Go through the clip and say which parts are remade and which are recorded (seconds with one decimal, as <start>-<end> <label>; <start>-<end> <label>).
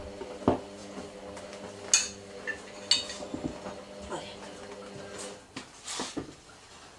0.0-7.0 recorded